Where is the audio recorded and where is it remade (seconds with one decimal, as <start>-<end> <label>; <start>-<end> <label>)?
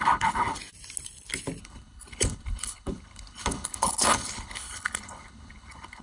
0.0-0.6 remade; 0.6-1.6 recorded; 1.6-6.0 remade